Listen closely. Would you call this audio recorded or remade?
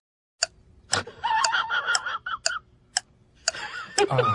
recorded